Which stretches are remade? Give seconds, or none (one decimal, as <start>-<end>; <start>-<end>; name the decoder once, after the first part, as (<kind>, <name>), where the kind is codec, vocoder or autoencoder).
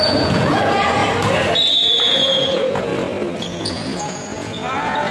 0.0-1.0 (vocoder, Vocos); 1.7-2.9; 3.4-5.1